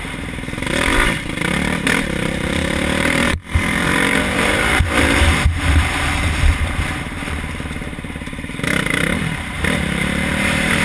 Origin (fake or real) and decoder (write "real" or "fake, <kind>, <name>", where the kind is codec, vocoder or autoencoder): fake, vocoder, BigVGAN v2